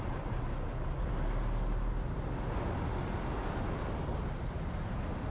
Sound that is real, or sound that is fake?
real